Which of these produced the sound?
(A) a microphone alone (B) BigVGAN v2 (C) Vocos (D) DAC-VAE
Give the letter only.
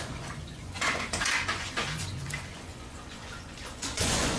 C